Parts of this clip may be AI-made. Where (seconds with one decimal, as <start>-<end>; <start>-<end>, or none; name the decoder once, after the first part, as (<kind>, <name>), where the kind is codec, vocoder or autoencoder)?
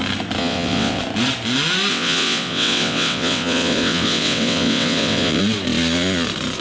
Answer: 0.4-1.0 (vocoder, WaveNeXt); 1.9-5.4